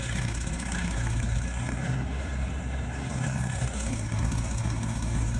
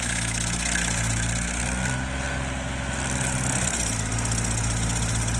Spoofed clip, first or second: first